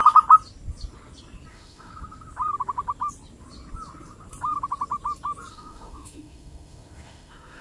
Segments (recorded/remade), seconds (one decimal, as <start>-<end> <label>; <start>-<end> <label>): 0.0-1.5 recorded; 1.5-1.9 remade; 1.9-5.5 recorded; 5.5-7.6 remade